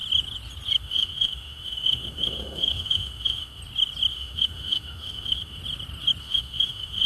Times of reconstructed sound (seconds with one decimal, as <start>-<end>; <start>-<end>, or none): 0.8-3.6; 4.1-5.6; 6.2-7.1